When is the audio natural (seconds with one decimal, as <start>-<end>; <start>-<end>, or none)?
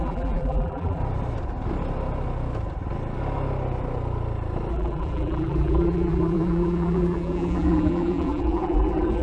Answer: 1.0-4.7